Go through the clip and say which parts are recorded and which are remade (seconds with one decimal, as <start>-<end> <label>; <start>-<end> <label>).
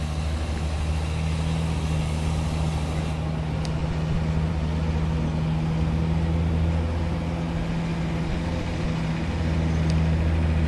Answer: 0.0-3.8 recorded; 3.8-4.5 remade; 4.5-7.9 recorded; 7.9-9.1 remade; 9.1-10.7 recorded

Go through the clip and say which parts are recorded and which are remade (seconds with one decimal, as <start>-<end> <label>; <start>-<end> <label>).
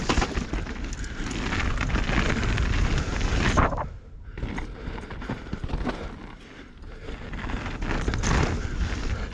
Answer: 0.0-9.3 recorded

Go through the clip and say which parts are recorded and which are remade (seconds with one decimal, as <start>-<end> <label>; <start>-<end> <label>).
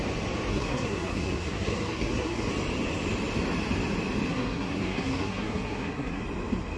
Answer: 0.0-0.5 recorded; 0.5-2.5 remade; 2.5-4.3 recorded; 4.3-6.2 remade; 6.2-6.8 recorded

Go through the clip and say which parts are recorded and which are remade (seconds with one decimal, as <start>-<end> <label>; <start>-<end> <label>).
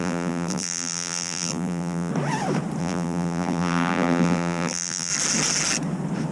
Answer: 0.0-2.1 remade; 2.1-2.8 recorded; 2.8-5.1 remade; 5.1-6.3 recorded